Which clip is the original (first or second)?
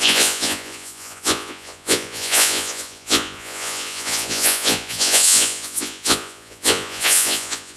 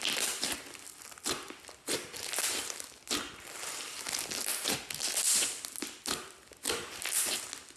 second